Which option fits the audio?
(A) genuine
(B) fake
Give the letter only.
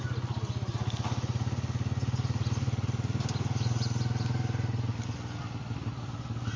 A